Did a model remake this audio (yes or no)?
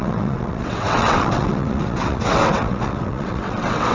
yes